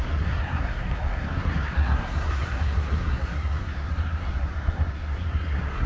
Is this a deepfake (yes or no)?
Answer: yes